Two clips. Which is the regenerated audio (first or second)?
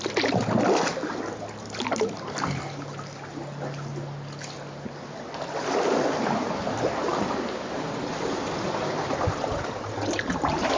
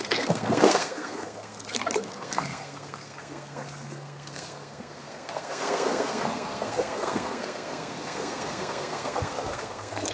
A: second